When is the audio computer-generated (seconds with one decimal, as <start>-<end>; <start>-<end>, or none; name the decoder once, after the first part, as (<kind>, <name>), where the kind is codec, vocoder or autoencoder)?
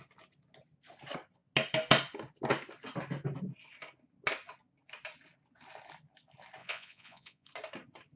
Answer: 6.6-7.5 (vocoder, Vocos)